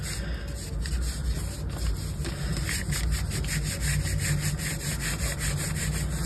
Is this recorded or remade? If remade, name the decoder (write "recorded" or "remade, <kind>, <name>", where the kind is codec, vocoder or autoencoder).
recorded